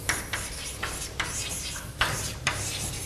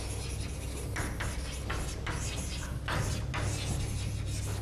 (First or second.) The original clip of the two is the second